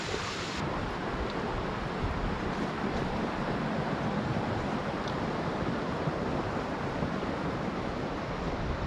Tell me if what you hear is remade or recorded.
remade